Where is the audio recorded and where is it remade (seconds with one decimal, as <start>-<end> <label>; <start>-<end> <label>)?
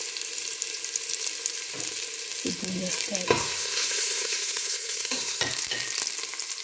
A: 0.0-3.4 recorded; 3.4-5.4 remade; 5.4-6.6 recorded